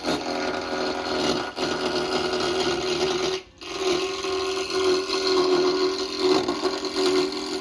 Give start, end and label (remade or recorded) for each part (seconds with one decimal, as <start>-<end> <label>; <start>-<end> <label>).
0.0-7.6 recorded